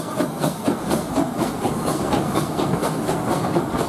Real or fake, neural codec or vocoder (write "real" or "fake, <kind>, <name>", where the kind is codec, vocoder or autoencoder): fake, codec, SNAC